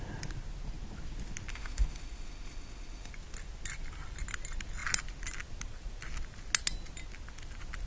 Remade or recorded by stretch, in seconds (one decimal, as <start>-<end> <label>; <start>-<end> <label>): 0.0-1.5 recorded; 1.5-3.1 remade; 3.1-7.9 recorded